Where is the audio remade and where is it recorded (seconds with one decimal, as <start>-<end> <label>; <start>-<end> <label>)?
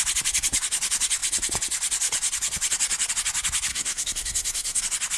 0.0-3.7 recorded; 3.7-4.8 remade; 4.8-5.2 recorded